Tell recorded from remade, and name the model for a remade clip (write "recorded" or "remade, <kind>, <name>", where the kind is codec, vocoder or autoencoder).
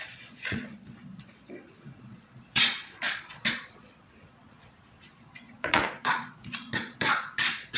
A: remade, vocoder, Vocos